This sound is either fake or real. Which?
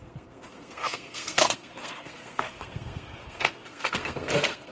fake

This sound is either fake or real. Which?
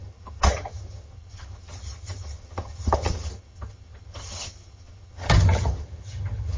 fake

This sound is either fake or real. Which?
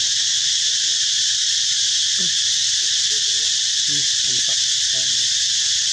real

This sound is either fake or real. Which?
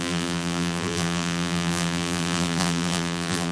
fake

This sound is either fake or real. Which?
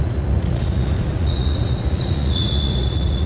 fake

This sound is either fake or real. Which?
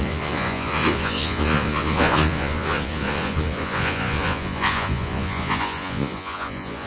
fake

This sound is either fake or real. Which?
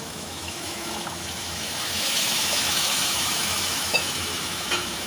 fake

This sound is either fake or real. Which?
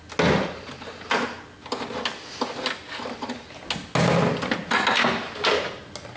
real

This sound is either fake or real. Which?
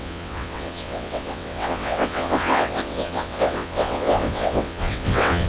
fake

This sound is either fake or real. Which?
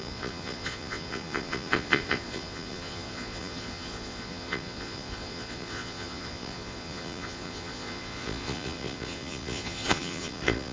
fake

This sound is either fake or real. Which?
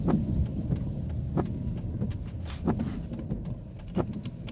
real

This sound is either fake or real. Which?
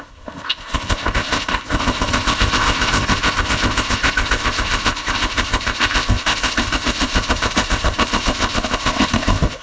fake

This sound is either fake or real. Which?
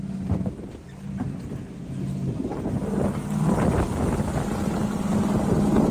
real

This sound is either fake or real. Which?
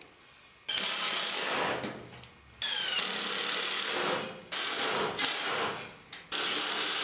real